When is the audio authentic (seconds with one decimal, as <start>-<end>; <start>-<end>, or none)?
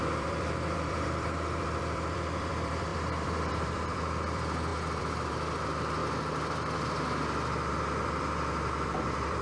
6.0-7.7